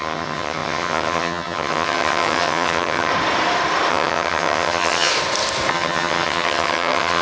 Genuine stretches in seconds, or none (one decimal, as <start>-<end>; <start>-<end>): 3.1-3.9; 5.1-5.7